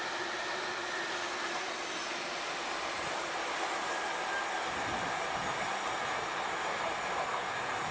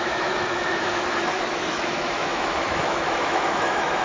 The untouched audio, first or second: first